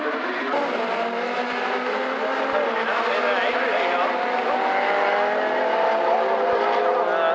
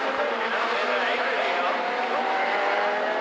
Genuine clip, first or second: first